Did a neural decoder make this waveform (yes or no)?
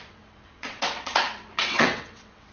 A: yes